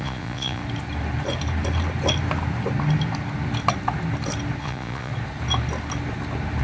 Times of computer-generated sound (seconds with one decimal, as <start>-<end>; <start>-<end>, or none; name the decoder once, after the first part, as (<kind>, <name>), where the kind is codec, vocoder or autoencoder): 0.0-0.6 (vocoder, Vocos); 4.6-5.1